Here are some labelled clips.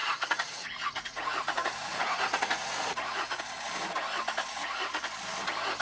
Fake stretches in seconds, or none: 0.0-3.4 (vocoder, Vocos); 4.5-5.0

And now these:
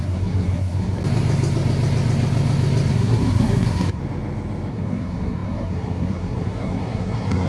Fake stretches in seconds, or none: 0.0-1.0 (codec, SNAC); 2.9-4.0; 4.7-7.5